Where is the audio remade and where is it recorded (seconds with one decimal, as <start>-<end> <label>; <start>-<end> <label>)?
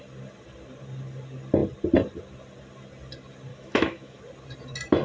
0.0-3.5 recorded; 3.5-4.2 remade; 4.2-5.0 recorded